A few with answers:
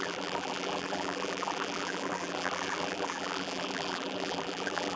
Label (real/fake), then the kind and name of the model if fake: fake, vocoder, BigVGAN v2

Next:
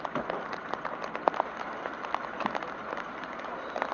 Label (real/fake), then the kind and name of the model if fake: real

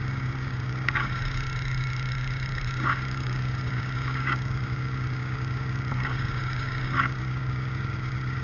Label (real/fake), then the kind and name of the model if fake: fake, codec, DAC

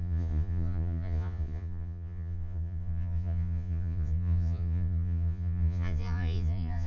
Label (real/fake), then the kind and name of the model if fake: fake, vocoder, Vocos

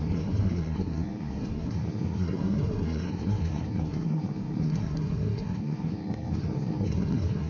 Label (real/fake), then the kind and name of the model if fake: fake, codec, SNAC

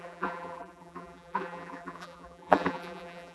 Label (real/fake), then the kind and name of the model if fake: fake, vocoder, BigVGAN v2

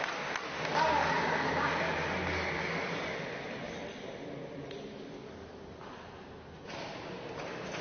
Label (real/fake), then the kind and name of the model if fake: real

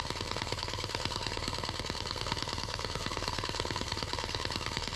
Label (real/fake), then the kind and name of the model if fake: fake, codec, SNAC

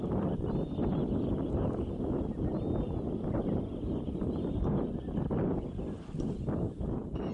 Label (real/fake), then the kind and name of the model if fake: real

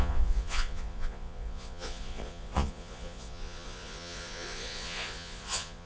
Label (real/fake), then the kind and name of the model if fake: fake, vocoder, Vocos